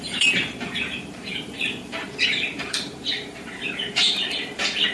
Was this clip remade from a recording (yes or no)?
yes